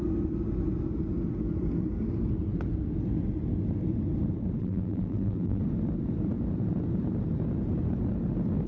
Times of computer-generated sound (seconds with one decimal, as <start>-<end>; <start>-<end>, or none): 4.6-5.6